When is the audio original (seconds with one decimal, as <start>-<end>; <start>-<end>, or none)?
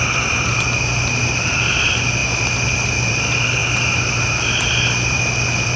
0.0-5.8